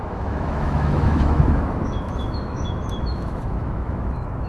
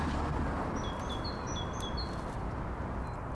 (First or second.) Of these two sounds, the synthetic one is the first